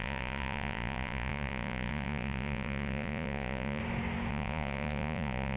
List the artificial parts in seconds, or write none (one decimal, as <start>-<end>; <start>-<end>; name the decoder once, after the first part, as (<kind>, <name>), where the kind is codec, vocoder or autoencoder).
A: 0.0-3.8 (vocoder, Vocos); 4.3-5.6